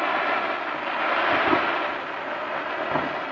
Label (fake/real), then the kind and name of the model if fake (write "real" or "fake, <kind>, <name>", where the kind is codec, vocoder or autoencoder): real